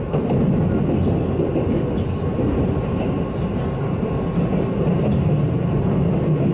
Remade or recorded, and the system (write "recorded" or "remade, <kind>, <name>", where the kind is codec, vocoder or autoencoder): recorded